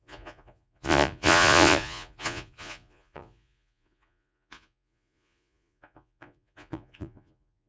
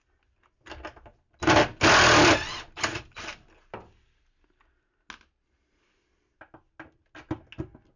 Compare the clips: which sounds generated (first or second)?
first